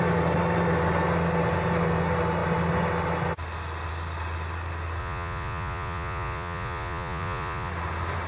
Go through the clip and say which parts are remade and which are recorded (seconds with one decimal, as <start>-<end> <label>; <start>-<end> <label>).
0.0-5.0 recorded; 5.0-7.7 remade; 7.7-8.3 recorded

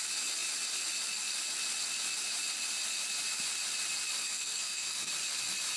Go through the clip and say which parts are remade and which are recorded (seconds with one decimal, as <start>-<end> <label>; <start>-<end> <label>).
0.0-4.2 recorded; 4.2-5.1 remade; 5.1-5.8 recorded

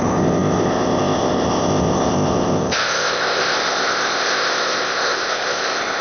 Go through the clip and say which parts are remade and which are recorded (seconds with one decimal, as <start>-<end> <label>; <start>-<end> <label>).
0.0-6.0 remade